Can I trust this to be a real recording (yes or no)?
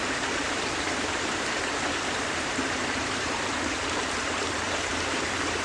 no